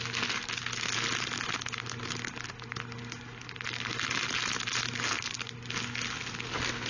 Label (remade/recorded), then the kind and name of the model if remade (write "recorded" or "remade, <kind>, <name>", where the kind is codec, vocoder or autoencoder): recorded